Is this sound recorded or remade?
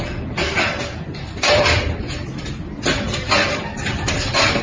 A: recorded